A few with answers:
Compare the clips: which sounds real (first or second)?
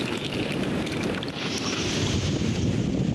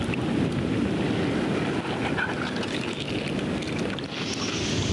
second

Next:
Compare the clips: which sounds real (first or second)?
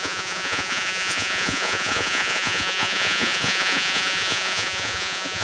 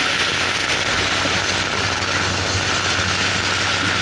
second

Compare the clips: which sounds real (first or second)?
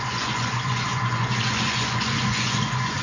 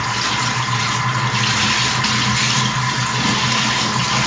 second